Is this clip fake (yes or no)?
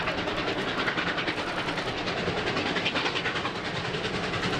no